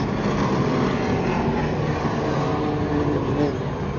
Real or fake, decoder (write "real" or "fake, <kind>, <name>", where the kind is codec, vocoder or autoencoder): real